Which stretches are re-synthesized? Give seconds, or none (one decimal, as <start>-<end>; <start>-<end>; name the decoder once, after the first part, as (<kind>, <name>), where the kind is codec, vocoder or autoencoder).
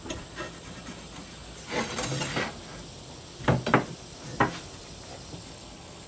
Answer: 5.4-6.1 (codec, HILCodec)